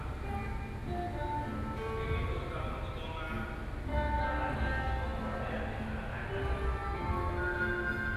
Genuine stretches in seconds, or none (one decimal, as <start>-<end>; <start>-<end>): 0.0-8.2